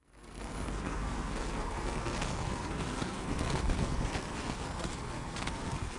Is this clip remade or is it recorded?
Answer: remade